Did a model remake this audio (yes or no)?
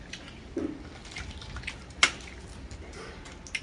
no